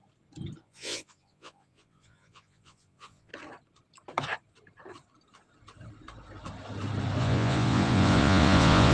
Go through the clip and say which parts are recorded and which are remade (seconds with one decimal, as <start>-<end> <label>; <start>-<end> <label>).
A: 0.0-0.6 recorded; 0.6-3.3 remade; 3.3-7.2 recorded; 7.2-8.9 remade